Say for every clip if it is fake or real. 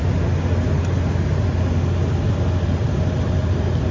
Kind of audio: real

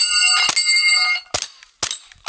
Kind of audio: real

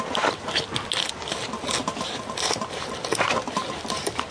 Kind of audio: real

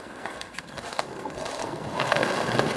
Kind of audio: fake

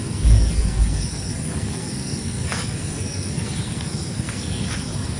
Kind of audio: fake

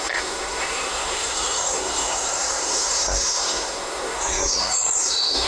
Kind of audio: fake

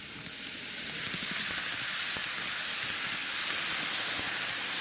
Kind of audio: real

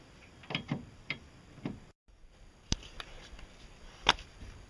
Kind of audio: real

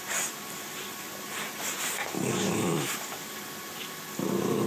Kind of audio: real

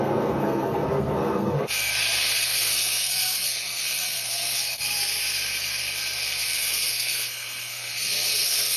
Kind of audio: fake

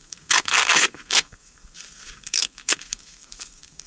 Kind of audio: fake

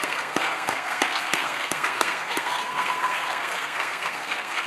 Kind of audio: fake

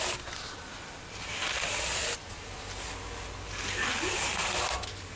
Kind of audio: real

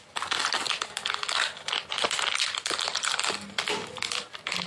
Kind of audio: real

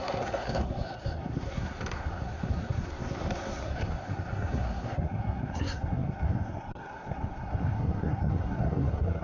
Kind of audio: fake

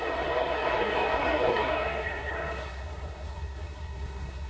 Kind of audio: fake